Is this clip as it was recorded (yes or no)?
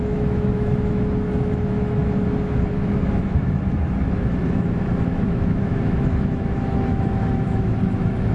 no